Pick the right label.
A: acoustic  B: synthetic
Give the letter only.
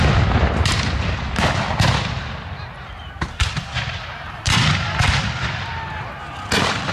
A